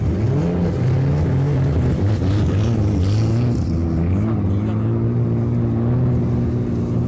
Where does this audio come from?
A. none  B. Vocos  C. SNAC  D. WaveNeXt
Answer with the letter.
A